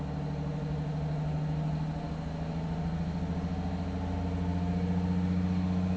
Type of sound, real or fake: real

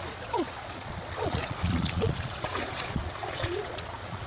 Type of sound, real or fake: fake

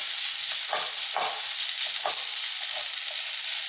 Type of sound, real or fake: real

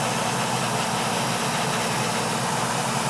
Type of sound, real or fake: real